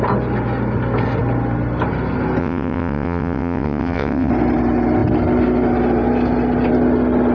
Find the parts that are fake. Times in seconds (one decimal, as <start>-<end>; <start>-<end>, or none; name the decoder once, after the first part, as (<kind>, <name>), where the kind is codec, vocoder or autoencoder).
2.4-4.3 (vocoder, WaveNeXt)